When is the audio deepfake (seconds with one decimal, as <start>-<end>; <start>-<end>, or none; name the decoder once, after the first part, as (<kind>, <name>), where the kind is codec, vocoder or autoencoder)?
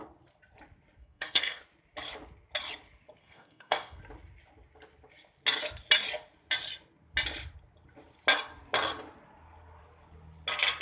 1.0-1.6 (codec, SNAC); 3.2-4.0